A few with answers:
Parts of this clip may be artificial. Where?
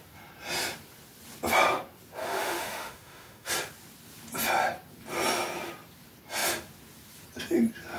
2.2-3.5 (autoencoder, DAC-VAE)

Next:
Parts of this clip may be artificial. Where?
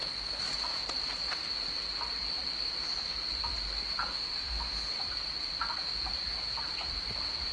4.1-5.0 (autoencoder, DAC-VAE)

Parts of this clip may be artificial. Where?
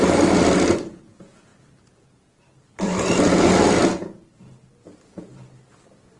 none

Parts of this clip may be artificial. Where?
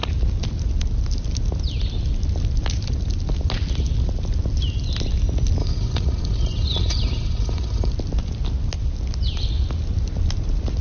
5.6-7.9 (vocoder, Vocos)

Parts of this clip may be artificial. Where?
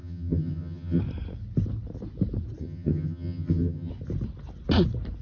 0.0-1.0 (vocoder, HiFi-GAN); 2.6-3.9